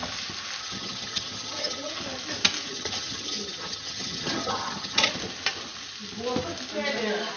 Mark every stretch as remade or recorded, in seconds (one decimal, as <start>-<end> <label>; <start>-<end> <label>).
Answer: 0.0-0.6 recorded; 0.6-1.9 remade; 1.9-2.7 recorded; 2.7-5.1 remade; 5.1-7.4 recorded